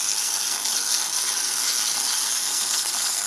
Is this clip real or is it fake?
fake